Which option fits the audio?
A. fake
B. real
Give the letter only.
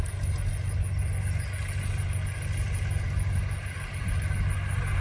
B